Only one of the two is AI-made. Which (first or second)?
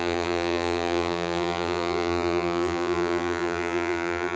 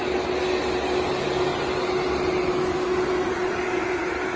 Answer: first